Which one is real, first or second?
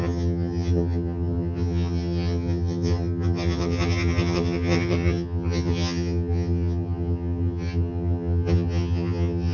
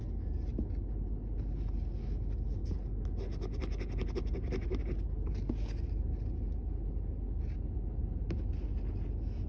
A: second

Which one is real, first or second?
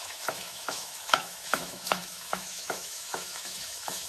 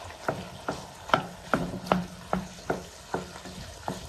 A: second